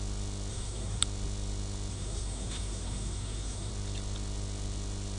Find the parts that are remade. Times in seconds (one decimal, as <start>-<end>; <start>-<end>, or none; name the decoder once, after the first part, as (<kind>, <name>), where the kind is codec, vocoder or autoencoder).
0.5-1.0 (codec, SNAC); 1.9-3.7